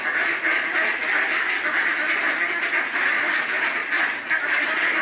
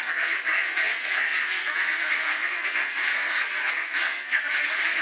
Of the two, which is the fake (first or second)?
second